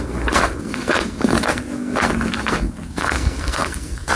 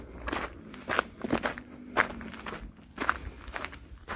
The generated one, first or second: first